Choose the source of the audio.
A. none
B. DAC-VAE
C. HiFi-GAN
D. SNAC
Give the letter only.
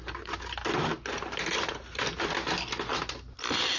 A